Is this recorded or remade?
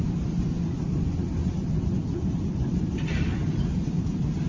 remade